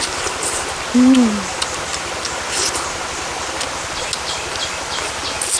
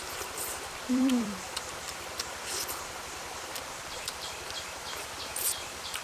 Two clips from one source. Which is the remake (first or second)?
second